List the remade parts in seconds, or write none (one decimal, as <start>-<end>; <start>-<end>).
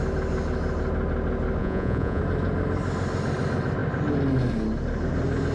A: 1.6-2.2